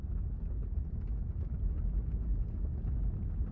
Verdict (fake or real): real